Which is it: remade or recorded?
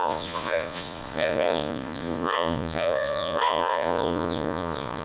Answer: remade